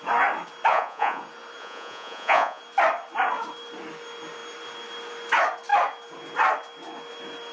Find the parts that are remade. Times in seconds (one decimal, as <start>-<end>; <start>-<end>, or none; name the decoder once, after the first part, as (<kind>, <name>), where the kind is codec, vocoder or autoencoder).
0.7-1.2 (vocoder, Vocos); 1.6-2.6